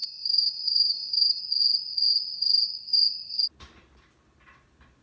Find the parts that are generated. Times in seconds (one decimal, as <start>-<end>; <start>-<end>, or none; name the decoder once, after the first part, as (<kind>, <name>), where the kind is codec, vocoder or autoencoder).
0.0-1.4 (autoencoder, DAC-VAE)